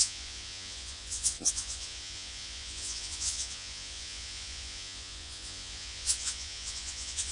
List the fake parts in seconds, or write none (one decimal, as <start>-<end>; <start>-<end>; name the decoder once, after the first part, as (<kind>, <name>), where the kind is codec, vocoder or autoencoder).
0.0-7.3 (vocoder, Vocos)